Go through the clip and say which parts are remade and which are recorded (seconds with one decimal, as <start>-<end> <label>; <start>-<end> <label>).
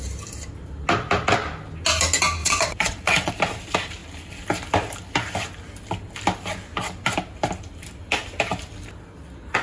0.0-2.4 recorded; 2.4-3.3 remade; 3.3-9.6 recorded